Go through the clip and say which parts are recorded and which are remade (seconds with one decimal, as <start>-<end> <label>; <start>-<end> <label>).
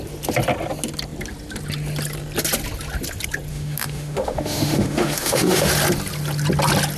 0.0-3.5 recorded; 3.5-5.7 remade; 5.7-7.0 recorded